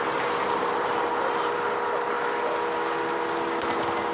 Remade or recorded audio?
recorded